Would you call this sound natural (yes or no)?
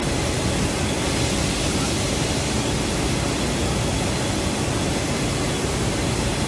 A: yes